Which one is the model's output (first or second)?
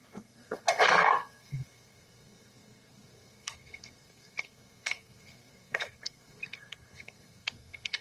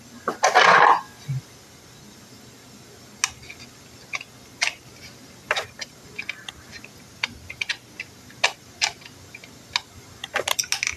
first